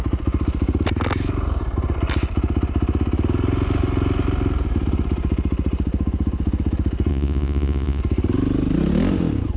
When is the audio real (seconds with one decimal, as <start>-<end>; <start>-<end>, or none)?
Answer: 0.0-7.1; 8.0-9.6